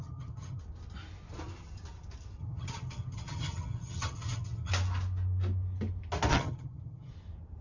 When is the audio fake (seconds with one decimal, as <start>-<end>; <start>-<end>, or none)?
0.0-0.6; 2.4-4.7; 6.3-7.1